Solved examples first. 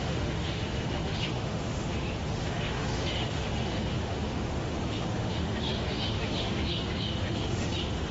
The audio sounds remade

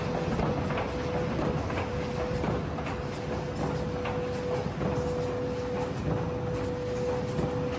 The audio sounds recorded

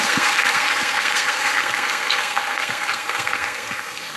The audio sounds remade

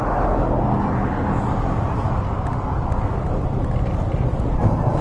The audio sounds recorded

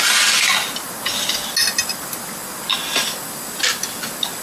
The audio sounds recorded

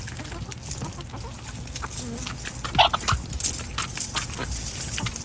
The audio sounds recorded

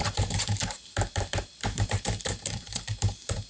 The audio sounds remade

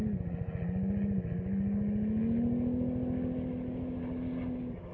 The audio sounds recorded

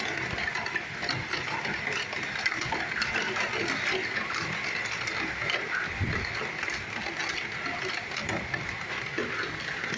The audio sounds recorded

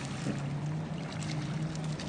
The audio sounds recorded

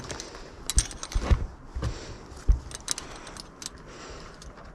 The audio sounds recorded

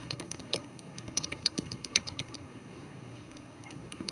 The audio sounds remade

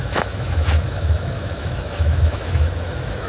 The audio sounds remade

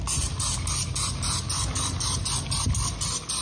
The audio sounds recorded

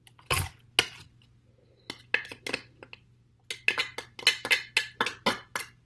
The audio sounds recorded